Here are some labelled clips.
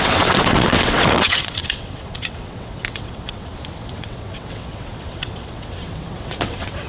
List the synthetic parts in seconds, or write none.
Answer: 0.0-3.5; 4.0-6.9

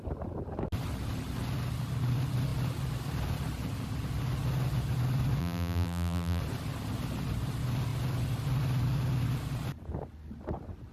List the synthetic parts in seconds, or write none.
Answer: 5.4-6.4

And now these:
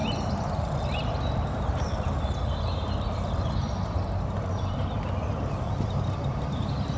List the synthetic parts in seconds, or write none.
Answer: 0.6-7.0